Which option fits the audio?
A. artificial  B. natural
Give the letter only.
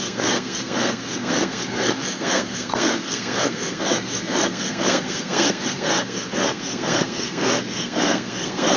A